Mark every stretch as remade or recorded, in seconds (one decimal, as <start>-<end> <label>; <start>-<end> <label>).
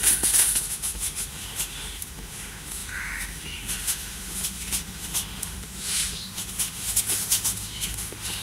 0.0-8.4 remade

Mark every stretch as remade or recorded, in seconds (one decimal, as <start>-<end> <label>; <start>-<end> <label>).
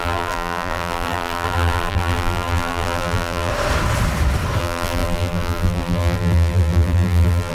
0.0-3.5 remade; 3.5-4.6 recorded; 4.6-7.5 remade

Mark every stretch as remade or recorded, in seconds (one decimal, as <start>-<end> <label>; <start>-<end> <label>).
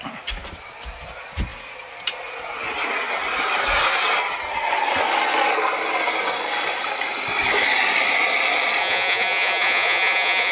0.0-8.8 recorded; 8.8-10.5 remade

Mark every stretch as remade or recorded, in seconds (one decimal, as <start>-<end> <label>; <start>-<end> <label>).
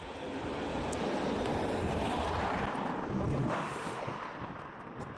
0.0-3.4 recorded; 3.4-4.0 remade; 4.0-5.2 recorded